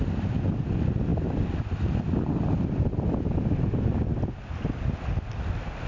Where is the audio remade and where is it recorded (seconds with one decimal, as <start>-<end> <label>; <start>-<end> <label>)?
0.0-5.9 recorded